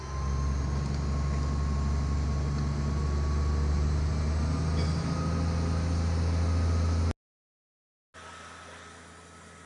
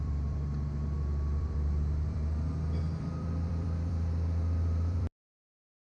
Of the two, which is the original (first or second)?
first